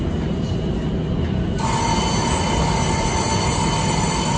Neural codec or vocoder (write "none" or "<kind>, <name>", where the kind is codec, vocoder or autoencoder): none